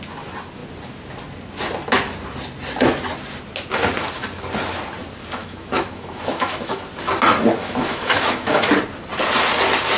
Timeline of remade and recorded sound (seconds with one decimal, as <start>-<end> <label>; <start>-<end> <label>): 0.0-5.4 recorded; 5.4-6.8 remade; 6.8-7.6 recorded; 7.6-8.7 remade; 8.7-10.0 recorded